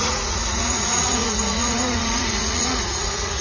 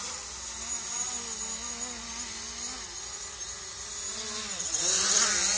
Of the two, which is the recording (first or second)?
second